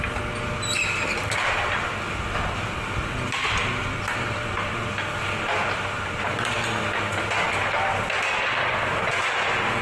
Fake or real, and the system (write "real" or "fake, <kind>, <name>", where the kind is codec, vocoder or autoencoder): real